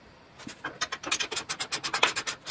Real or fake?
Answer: real